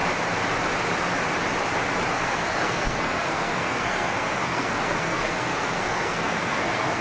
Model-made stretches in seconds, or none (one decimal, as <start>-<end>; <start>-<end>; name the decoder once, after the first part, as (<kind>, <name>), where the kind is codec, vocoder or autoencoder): 2.1-7.0 (codec, SNAC)